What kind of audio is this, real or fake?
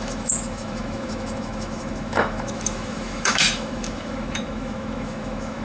fake